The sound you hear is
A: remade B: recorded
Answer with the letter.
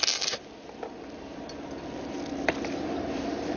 B